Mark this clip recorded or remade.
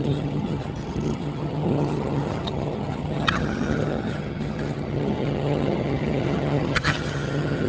remade